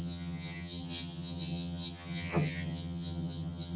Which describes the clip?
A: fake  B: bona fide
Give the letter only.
A